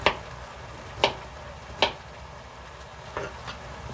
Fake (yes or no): no